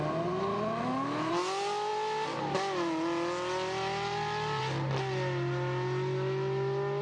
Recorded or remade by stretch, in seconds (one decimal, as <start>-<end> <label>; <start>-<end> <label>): 0.0-0.5 recorded; 0.5-1.3 remade; 1.3-7.0 recorded